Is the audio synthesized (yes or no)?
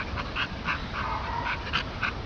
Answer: no